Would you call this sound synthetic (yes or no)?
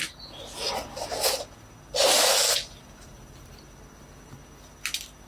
no